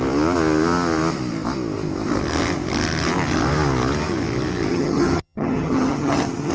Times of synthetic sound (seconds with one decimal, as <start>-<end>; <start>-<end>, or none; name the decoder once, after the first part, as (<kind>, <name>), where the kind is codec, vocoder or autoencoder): 4.7-6.5 (vocoder, HiFi-GAN)